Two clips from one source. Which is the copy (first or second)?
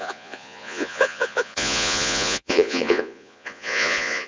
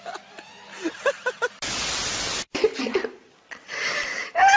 first